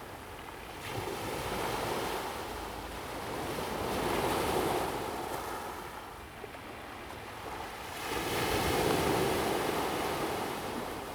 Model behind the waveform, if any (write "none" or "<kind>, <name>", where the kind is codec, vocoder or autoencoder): none